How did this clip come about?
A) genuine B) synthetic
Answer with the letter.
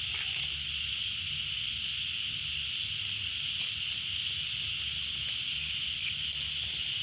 A